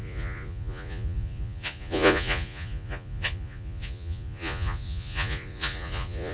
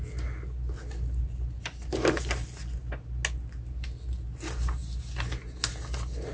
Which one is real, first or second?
second